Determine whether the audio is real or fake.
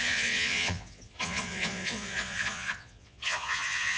fake